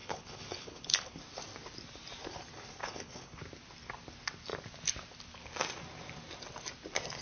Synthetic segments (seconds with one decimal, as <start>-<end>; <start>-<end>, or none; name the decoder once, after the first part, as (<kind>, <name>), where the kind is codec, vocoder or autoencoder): 0.0-1.2 (codec, HILCodec); 2.8-3.4